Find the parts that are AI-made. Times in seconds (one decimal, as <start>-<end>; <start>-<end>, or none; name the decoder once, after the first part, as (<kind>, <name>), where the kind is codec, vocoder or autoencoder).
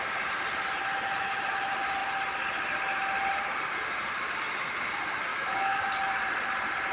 5.3-5.9 (autoencoder, DAC-VAE)